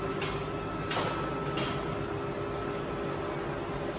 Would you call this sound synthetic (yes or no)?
no